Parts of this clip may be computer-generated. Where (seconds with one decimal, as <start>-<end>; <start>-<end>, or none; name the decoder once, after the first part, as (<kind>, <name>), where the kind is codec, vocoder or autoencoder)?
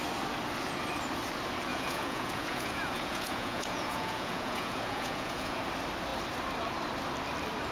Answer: 1.7-5.6 (vocoder, Vocos)